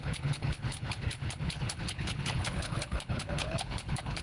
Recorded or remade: remade